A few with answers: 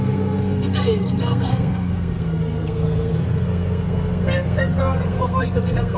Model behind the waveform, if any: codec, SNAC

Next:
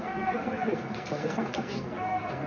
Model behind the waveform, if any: codec, SNAC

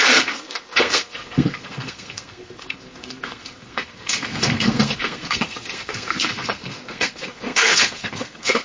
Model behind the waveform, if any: codec, SNAC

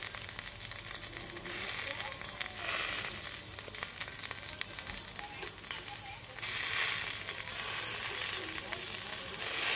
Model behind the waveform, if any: none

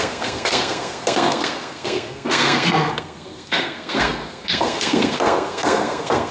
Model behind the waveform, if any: codec, SNAC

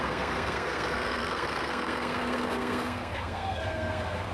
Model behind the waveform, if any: codec, SNAC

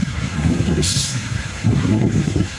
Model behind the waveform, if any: codec, SNAC